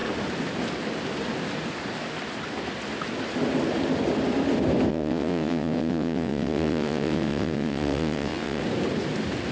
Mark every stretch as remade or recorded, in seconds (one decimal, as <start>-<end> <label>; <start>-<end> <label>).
0.0-4.9 recorded; 4.9-8.6 remade; 8.6-9.5 recorded